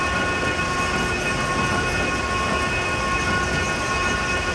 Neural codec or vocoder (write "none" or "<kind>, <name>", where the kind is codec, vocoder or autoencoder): none